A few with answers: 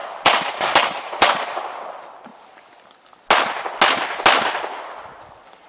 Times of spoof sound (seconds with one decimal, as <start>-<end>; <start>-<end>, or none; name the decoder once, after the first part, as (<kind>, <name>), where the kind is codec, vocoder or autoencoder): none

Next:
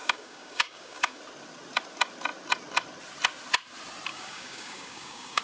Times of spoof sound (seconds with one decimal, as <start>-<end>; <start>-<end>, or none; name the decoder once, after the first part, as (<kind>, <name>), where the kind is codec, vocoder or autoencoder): 0.0-1.2 (codec, DAC); 4.1-5.4

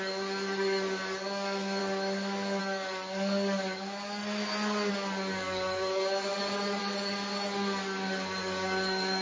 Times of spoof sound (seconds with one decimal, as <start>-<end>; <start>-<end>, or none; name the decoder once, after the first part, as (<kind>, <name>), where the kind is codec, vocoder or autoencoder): 0.0-1.8 (codec, DAC); 2.6-4.2; 4.9-9.2

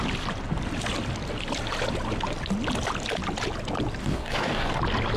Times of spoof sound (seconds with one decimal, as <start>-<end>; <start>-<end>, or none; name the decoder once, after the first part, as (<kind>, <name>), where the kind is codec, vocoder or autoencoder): 4.0-4.8 (codec, DAC)

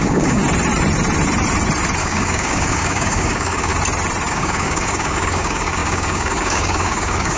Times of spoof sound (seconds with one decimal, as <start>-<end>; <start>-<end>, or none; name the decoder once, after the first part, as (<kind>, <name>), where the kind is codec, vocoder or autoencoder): 0.0-0.4 (codec, DAC); 2.0-3.7; 4.3-7.4